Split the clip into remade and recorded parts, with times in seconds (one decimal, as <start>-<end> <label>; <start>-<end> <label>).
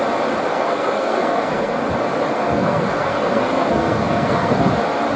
0.0-0.5 recorded; 0.5-1.8 remade; 1.8-2.3 recorded; 2.3-4.6 remade; 4.6-5.2 recorded